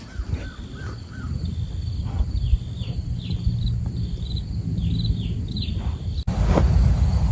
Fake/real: real